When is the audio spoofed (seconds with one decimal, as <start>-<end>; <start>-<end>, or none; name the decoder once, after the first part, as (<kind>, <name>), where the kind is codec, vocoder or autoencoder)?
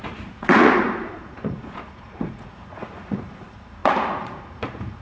0.0-5.0 (vocoder, Vocos)